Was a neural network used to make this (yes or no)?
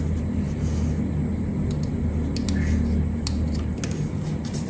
no